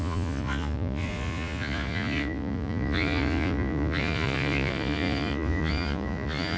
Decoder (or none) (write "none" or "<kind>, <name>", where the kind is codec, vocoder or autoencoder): vocoder, Vocos